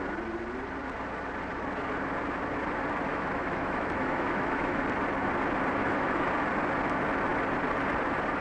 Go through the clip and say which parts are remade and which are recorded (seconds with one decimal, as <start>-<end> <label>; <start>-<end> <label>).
0.0-3.1 recorded; 3.1-4.8 remade; 4.8-5.8 recorded; 5.8-6.3 remade; 6.3-8.4 recorded